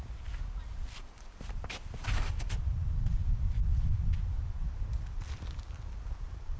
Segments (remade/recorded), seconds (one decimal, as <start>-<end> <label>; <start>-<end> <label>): 0.0-6.6 recorded